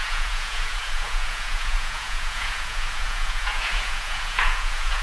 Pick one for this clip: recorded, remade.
remade